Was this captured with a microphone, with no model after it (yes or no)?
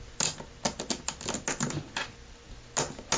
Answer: yes